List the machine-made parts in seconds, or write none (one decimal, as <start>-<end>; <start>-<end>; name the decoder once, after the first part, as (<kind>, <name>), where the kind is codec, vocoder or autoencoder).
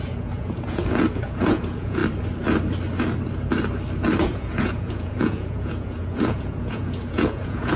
0.0-2.0 (vocoder, Vocos); 4.2-7.8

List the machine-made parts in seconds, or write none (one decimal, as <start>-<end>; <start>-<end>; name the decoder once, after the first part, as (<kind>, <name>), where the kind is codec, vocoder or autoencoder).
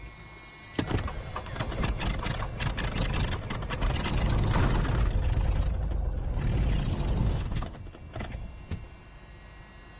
7.2-7.8 (codec, DAC)